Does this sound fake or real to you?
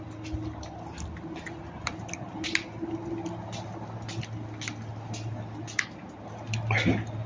real